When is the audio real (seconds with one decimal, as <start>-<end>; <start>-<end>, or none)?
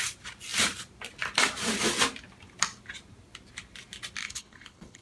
0.0-4.2